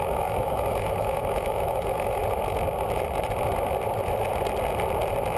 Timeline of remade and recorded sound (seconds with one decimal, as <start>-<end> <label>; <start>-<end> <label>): 0.0-2.2 remade; 2.2-5.4 recorded